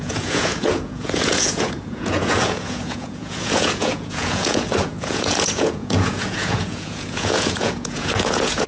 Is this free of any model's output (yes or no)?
no